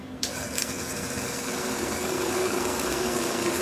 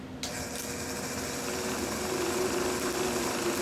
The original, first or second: second